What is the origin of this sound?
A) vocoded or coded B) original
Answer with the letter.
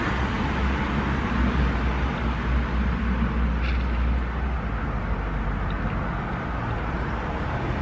B